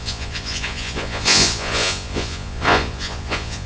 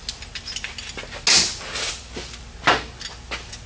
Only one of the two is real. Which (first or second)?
second